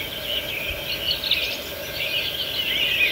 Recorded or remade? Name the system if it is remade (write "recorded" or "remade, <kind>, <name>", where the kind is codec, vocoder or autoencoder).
recorded